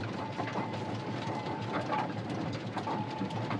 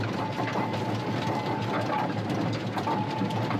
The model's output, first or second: first